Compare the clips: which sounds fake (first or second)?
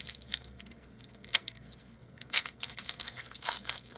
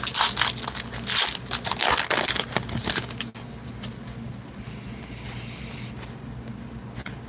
first